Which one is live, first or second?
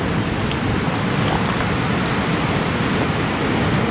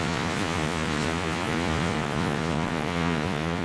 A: first